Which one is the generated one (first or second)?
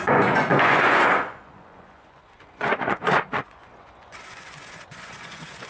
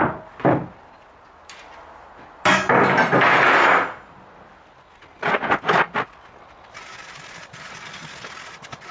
first